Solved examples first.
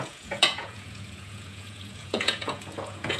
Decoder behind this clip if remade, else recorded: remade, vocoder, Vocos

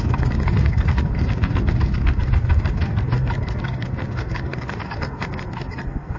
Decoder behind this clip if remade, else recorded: remade, codec, SNAC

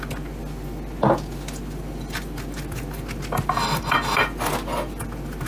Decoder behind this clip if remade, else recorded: recorded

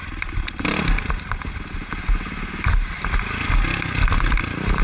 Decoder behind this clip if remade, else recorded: recorded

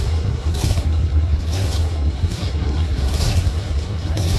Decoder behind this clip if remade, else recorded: remade, codec, SNAC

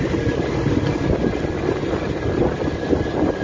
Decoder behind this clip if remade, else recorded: recorded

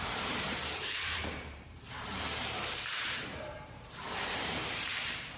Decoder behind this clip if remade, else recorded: remade, vocoder, BigVGAN v2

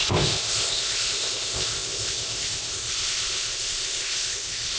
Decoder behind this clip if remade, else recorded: remade, codec, ZipCodec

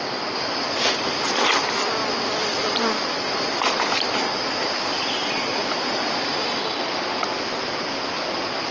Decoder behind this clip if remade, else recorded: recorded